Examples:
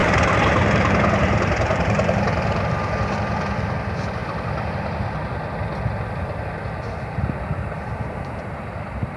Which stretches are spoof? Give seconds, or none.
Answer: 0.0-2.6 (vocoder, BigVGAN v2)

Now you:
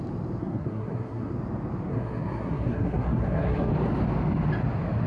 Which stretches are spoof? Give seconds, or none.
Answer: 0.4-1.3 (codec, SNAC); 1.9-3.7